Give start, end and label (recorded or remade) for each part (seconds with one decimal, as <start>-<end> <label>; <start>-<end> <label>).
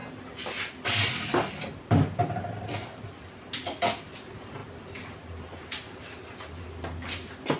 0.0-7.6 recorded